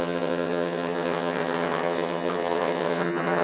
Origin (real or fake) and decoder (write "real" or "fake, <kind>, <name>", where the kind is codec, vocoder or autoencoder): fake, vocoder, HiFi-GAN